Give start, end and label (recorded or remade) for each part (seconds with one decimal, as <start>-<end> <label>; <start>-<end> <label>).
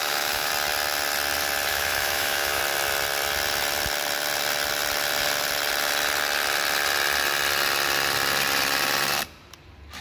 0.0-0.5 remade; 0.5-1.7 recorded; 1.7-2.6 remade; 2.6-10.0 recorded